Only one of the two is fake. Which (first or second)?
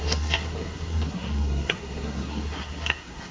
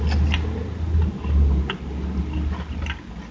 first